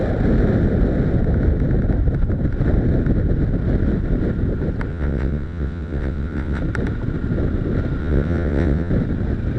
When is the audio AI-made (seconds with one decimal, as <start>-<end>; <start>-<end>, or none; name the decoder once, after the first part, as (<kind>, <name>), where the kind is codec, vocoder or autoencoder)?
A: 4.9-6.6 (vocoder, WaveNeXt); 8.0-8.9